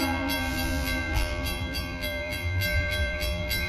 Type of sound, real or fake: fake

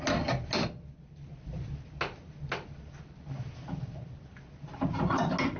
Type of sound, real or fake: real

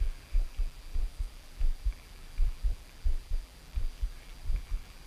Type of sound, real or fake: fake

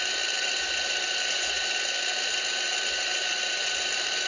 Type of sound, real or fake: real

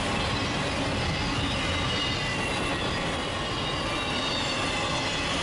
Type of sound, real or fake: real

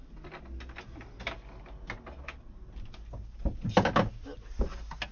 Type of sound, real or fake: real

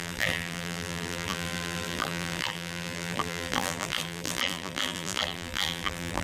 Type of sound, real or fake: fake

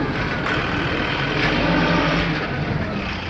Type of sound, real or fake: real